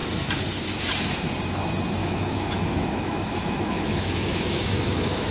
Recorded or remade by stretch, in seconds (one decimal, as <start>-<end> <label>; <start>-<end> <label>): 0.0-2.0 recorded; 2.0-5.3 remade